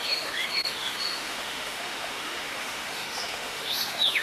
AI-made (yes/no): yes